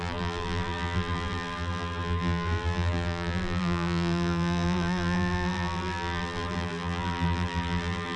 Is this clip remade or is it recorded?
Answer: remade